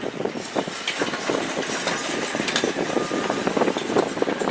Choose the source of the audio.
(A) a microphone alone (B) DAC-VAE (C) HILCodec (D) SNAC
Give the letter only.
A